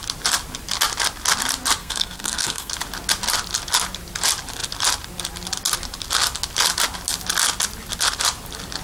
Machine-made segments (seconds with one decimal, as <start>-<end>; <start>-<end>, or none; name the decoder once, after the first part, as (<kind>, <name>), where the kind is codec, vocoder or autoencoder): 1.8-2.7 (codec, SNAC)